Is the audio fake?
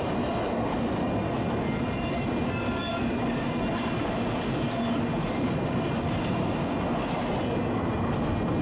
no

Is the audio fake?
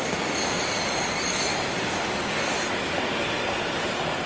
no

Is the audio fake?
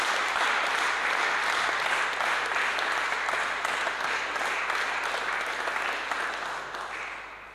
no